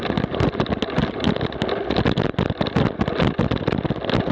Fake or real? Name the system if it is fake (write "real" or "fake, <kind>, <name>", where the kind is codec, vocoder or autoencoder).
real